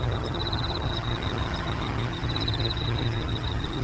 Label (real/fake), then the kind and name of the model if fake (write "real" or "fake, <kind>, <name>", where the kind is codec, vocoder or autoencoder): fake, vocoder, HiFi-GAN